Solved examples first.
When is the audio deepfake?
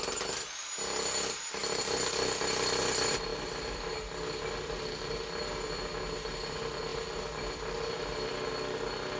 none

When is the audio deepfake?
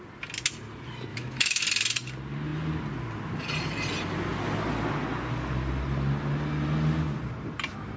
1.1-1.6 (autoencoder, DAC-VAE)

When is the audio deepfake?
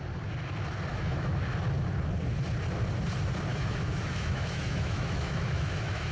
0.9-1.4 (autoencoder, DAC-VAE); 3.5-6.1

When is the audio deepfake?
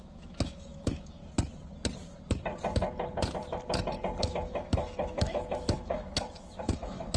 0.0-1.2 (autoencoder, DAC-VAE); 4.2-7.2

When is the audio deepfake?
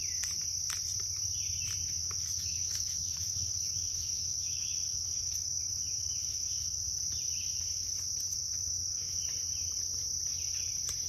2.0-6.8 (autoencoder, DAC-VAE); 8.3-9.2